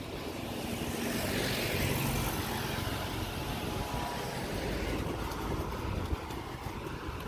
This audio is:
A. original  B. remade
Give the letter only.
A